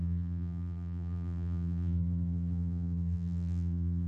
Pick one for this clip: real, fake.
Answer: fake